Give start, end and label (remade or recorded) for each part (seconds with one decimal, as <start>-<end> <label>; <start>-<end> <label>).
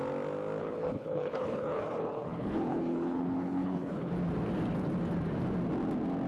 0.0-0.6 recorded; 0.6-4.1 remade; 4.1-6.3 recorded